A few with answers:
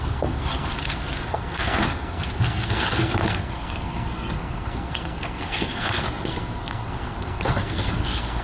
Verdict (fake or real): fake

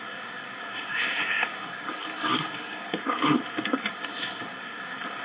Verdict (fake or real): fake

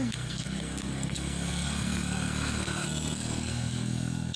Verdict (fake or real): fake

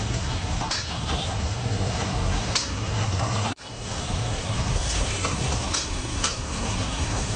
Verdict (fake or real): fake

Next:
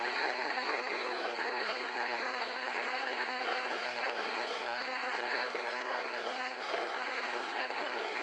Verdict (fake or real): fake